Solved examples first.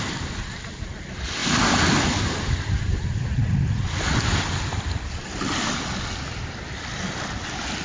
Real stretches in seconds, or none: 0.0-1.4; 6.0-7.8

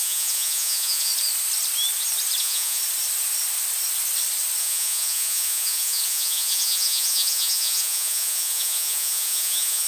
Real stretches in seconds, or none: 1.1-2.4; 2.8-4.6

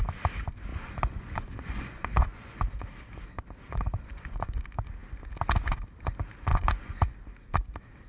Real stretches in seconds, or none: 0.0-0.7; 2.6-3.7; 4.6-6.5; 7.0-8.1

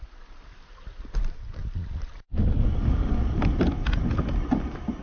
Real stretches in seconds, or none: 0.0-5.0